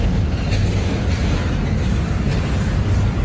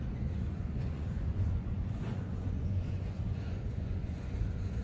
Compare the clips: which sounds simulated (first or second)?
second